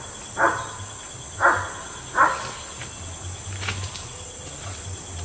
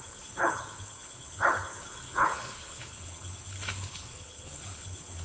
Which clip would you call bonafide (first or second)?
first